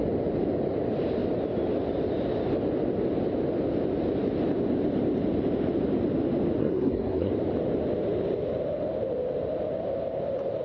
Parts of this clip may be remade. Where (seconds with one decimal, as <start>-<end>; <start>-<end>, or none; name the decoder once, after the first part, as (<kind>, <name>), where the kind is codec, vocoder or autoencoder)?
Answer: 6.6-7.3 (codec, SNAC)